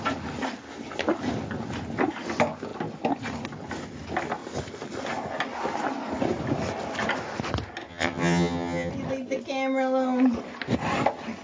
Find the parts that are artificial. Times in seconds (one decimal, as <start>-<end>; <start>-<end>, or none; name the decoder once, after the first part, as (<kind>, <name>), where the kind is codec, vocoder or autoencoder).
7.9-8.9 (vocoder, HiFi-GAN)